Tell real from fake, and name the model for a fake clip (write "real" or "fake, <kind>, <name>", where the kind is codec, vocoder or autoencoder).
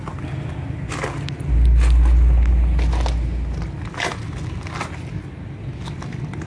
real